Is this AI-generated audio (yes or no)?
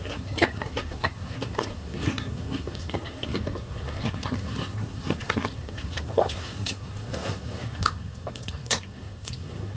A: yes